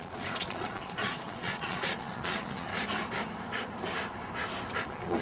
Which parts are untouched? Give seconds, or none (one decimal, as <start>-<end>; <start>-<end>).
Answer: 2.7-4.8